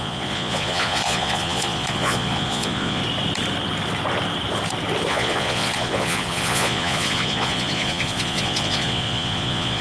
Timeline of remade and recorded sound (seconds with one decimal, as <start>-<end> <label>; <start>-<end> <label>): 0.0-3.0 remade; 3.0-5.1 recorded; 5.1-9.8 remade